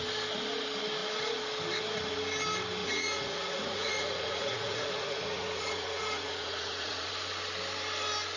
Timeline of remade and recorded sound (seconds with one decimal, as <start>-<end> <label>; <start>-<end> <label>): 0.0-2.8 recorded; 2.8-7.1 remade; 7.1-8.4 recorded